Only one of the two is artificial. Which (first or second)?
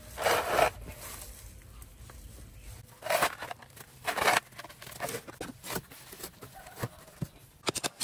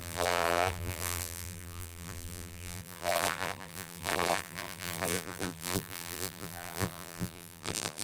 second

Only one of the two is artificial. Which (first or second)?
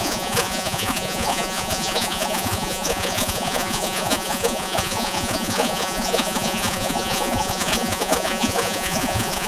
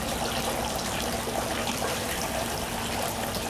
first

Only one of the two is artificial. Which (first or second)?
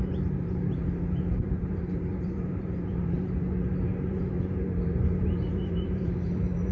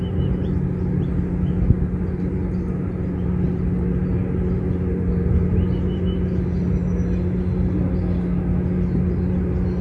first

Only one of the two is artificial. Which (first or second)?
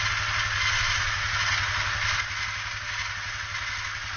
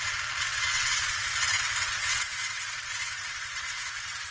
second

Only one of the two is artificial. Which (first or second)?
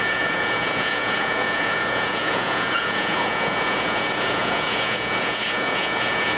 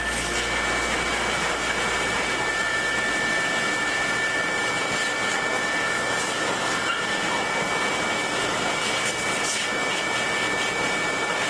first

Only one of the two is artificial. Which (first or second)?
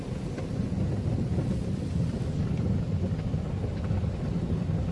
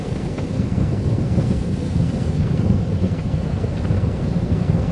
second